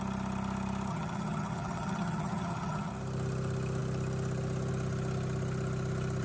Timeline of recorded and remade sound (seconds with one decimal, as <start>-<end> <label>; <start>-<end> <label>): 0.0-0.9 recorded; 0.9-2.9 remade; 2.9-6.2 recorded